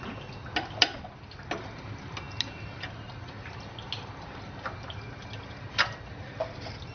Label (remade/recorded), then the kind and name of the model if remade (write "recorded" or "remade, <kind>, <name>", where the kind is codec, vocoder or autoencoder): recorded